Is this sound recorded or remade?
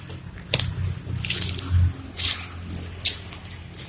recorded